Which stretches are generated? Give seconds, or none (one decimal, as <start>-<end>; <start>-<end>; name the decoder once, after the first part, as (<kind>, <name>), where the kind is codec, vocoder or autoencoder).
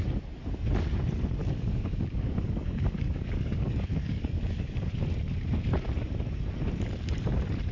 1.4-4.9 (codec, DAC)